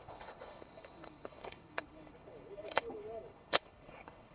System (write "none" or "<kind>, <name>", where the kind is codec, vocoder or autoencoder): codec, HILCodec